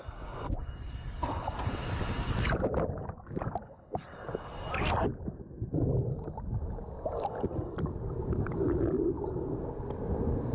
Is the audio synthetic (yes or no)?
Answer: no